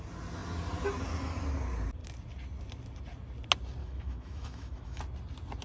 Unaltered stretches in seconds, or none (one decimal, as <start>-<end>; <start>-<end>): 0.0-3.8; 5.0-5.6

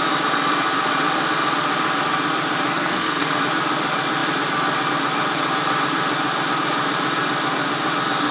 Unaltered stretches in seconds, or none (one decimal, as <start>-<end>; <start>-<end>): 0.0-2.7; 3.4-8.3

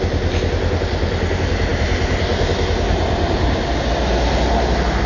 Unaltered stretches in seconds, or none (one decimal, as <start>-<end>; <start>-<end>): 0.0-5.1

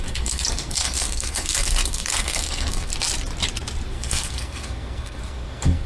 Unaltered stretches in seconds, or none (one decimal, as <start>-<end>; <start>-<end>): 2.9-3.9

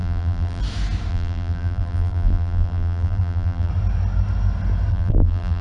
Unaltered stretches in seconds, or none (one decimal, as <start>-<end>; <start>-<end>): 0.6-1.1; 3.7-4.9

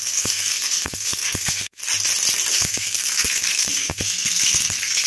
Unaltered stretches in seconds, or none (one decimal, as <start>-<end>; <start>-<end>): 1.8-2.5

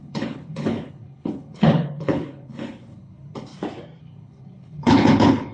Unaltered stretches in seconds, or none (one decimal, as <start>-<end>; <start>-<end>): 3.5-4.0